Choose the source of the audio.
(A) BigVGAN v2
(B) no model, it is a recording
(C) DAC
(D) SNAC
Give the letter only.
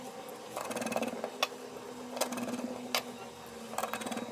B